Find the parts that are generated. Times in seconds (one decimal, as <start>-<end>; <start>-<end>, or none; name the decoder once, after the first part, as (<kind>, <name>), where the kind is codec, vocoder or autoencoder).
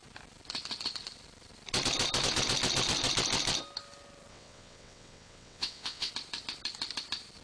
4.3-6.1 (vocoder, WaveNeXt)